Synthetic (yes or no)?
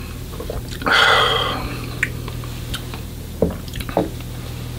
no